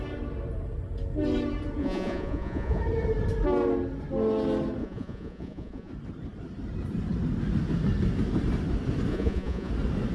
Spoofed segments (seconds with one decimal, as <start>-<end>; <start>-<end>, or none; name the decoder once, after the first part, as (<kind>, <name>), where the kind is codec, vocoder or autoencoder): 1.8-2.8 (vocoder, Vocos); 4.8-5.9; 9.1-9.7